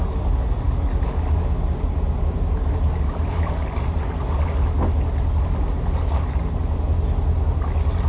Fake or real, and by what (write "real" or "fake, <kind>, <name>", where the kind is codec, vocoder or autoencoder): real